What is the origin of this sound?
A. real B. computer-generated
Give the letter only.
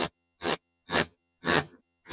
B